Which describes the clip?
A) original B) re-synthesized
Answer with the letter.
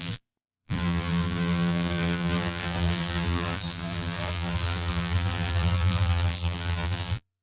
B